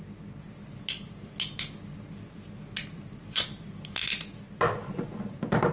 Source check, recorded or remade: recorded